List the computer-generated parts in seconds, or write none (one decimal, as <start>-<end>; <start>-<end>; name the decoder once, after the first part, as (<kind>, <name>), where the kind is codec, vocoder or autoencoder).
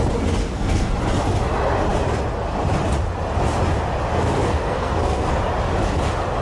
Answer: 0.4-0.9 (codec, SNAC); 4.1-5.4